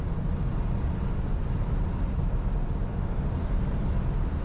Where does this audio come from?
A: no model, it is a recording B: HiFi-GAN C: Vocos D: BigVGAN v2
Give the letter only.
A